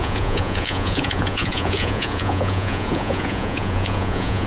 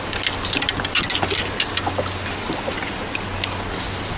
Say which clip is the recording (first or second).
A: second